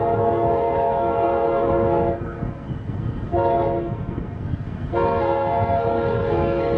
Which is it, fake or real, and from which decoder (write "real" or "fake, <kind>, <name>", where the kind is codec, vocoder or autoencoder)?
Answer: fake, codec, SNAC